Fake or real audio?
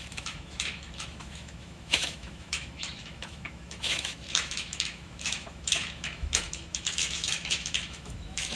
fake